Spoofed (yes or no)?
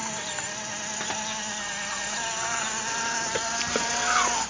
no